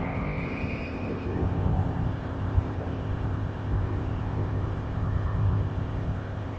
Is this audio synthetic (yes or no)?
yes